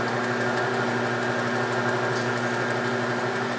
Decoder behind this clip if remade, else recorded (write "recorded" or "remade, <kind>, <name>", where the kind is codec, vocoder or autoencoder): recorded